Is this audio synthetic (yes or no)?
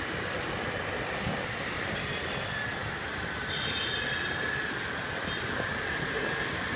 no